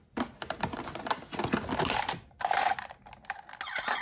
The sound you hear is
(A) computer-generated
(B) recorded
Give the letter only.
B